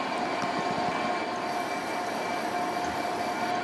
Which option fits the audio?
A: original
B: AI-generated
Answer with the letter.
A